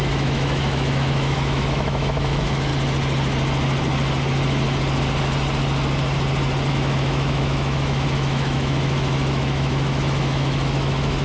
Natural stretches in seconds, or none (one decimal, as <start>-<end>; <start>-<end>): 2.7-6.7

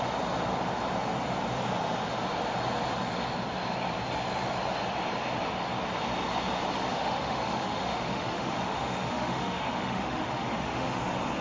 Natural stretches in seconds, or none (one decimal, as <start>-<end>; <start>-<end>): 0.0-6.9; 11.0-11.4

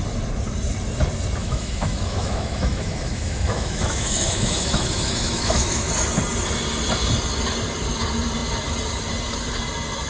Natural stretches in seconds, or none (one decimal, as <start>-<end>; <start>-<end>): 0.0-1.4; 5.9-10.1

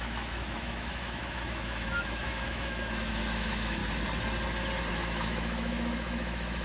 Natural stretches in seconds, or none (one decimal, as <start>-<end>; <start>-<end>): 3.8-4.9

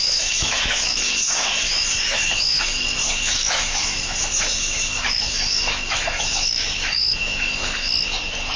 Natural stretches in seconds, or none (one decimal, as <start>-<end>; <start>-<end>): 7.9-8.6

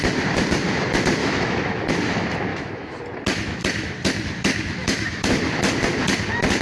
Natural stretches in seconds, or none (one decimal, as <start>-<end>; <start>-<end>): 0.0-1.2; 1.9-2.5; 3.0-4.8; 5.4-6.6